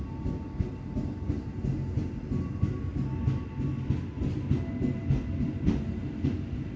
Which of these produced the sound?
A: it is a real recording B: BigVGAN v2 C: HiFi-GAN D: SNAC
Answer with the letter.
A